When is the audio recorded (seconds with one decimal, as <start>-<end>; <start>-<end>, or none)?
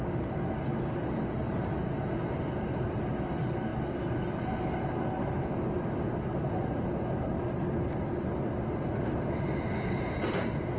0.0-10.8